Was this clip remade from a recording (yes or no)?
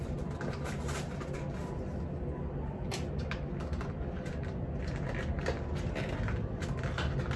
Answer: no